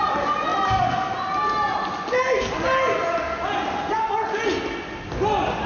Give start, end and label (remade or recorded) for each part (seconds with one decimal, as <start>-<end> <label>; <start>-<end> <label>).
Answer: 0.0-5.7 recorded